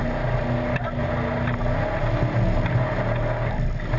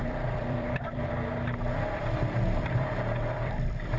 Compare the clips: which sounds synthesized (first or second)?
second